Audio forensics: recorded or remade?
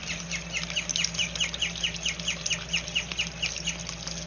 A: recorded